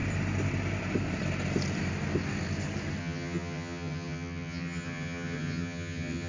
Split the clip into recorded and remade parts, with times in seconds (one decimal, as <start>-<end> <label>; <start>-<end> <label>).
0.0-3.0 recorded; 3.0-6.3 remade